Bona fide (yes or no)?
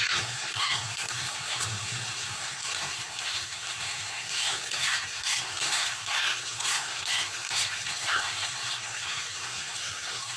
no